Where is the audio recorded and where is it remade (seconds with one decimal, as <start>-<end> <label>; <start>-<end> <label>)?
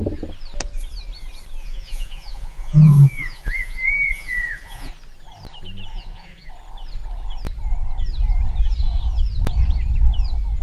0.0-1.6 recorded; 1.6-4.9 remade; 4.9-5.9 recorded; 5.9-6.5 remade; 6.5-10.6 recorded